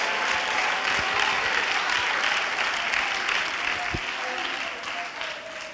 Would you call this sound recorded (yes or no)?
yes